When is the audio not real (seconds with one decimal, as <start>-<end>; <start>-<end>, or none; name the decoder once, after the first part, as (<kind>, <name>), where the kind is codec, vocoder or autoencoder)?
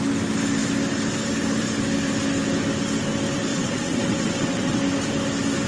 3.5-4.8 (vocoder, WaveNeXt)